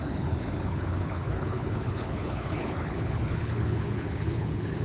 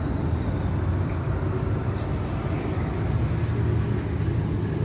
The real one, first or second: second